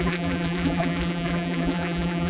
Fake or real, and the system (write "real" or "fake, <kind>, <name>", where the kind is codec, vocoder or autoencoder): fake, vocoder, BigVGAN v2